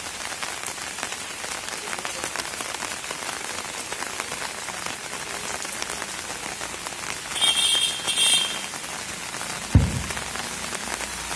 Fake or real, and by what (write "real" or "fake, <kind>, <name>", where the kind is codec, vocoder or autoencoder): real